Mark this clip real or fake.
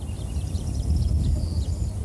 real